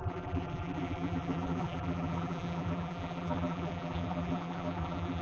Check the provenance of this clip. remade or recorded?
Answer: remade